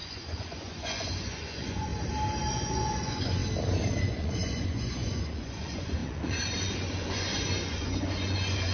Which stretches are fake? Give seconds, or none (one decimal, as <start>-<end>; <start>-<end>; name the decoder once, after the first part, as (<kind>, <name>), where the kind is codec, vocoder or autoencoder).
0.0-1.9 (vocoder, Vocos); 2.5-3.4; 4.0-8.7